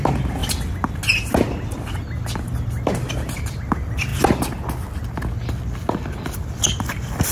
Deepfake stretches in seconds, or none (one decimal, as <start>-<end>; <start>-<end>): none